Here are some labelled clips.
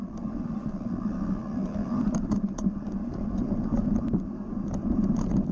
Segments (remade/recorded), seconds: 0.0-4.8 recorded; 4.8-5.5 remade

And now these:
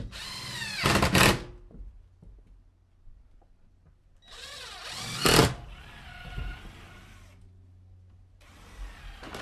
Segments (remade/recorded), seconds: 0.0-9.4 recorded

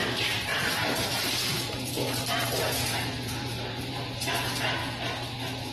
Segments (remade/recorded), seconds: 0.0-4.8 remade; 4.8-5.7 recorded

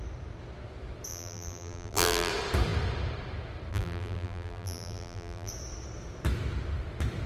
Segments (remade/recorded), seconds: 0.0-1.1 recorded; 1.1-2.3 remade; 2.3-3.7 recorded; 3.7-5.5 remade; 5.5-7.3 recorded

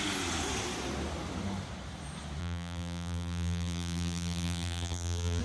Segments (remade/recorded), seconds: 0.0-2.4 recorded; 2.4-5.4 remade